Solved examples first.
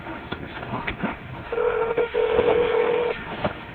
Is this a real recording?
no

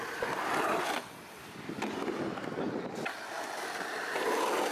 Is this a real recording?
yes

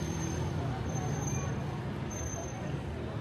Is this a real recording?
no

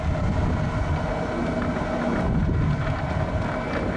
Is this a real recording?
yes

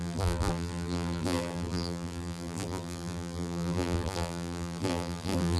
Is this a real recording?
no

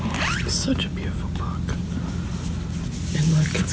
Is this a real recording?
yes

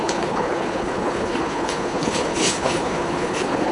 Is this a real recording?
no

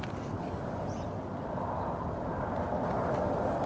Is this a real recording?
yes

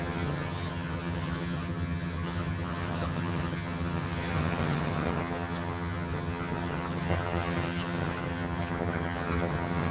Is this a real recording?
no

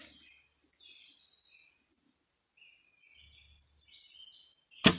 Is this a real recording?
yes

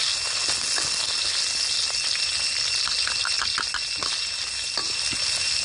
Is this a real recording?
yes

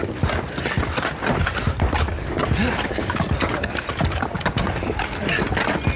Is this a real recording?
yes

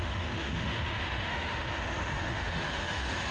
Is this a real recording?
no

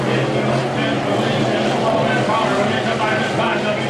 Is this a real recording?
yes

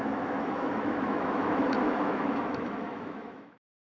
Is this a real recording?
no